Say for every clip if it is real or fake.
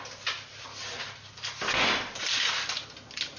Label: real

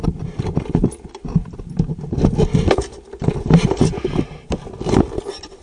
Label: real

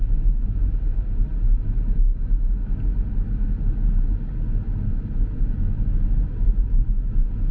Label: real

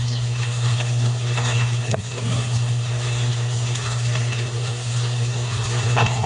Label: fake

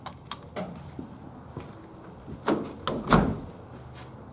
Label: real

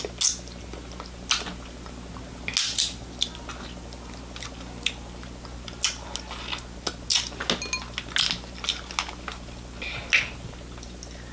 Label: real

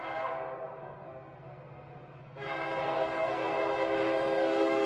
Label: fake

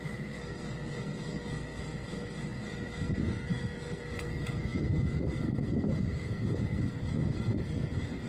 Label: fake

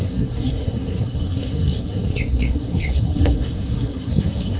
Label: fake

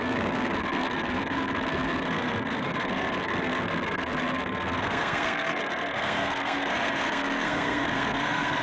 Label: fake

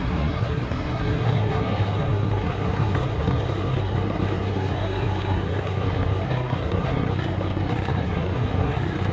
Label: fake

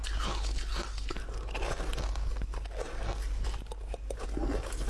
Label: real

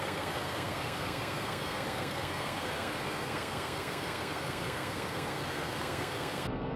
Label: fake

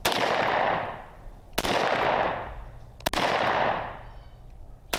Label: real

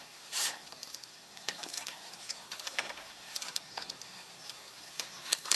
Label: fake